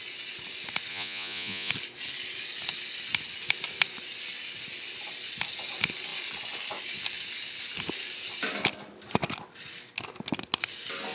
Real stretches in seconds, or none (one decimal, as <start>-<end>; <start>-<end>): 0.0-0.9; 1.7-11.1